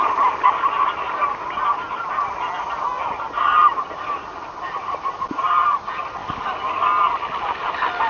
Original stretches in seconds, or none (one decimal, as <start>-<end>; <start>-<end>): 0.0-6.2; 6.8-8.1